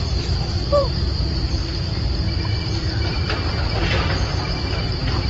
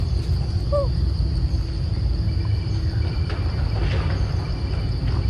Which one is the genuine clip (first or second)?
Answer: second